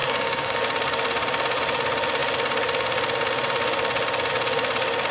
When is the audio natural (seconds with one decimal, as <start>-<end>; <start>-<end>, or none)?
0.6-5.1